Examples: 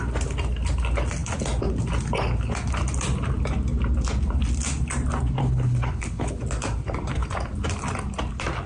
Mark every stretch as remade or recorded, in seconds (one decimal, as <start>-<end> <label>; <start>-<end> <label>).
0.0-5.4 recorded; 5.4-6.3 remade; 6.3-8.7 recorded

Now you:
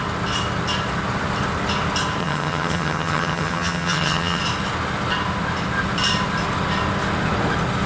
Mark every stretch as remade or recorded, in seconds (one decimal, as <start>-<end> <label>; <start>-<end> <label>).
0.0-2.2 recorded; 2.2-4.4 remade; 4.4-7.9 recorded

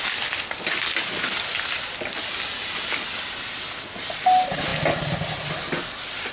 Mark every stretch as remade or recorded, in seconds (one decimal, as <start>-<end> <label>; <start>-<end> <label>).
0.0-6.3 recorded

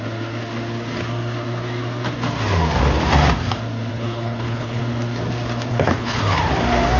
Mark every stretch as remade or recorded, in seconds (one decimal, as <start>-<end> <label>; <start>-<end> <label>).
0.0-3.9 recorded; 3.9-4.8 remade; 4.8-5.7 recorded; 5.7-6.2 remade; 6.2-7.0 recorded

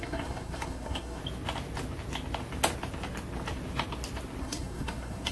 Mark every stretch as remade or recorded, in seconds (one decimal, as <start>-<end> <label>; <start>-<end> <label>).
0.0-1.2 remade; 1.2-4.4 recorded; 4.4-5.3 remade